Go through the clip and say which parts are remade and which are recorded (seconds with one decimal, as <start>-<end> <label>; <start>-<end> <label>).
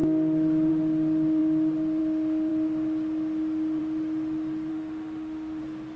0.0-4.7 recorded; 4.7-5.6 remade; 5.6-6.0 recorded